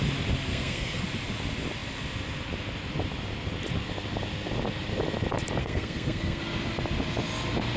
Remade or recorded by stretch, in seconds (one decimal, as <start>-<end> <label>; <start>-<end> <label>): 0.0-0.5 recorded; 0.5-1.0 remade; 1.0-5.6 recorded; 5.6-6.4 remade; 6.4-7.8 recorded